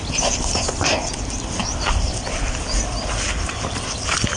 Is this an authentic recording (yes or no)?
yes